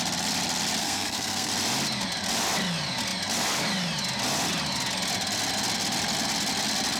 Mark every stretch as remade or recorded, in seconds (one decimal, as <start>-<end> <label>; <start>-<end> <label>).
0.0-0.8 recorded; 0.8-1.5 remade; 1.5-7.0 recorded